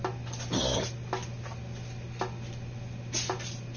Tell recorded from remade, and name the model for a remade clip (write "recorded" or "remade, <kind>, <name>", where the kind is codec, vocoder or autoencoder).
recorded